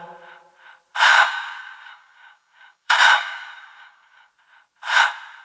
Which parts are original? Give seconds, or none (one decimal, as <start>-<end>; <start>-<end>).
0.0-1.1; 4.3-5.4